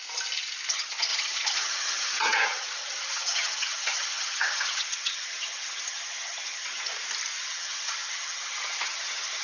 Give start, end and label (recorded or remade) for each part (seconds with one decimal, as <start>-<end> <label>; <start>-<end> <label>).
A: 0.0-0.7 recorded; 0.7-6.9 remade; 6.9-7.4 recorded; 7.4-9.4 remade